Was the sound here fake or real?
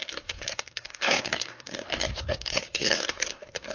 fake